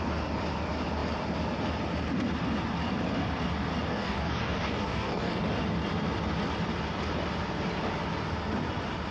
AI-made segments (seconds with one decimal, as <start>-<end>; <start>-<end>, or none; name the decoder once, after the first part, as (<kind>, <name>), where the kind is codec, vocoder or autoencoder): 3.9-5.4 (codec, DAC)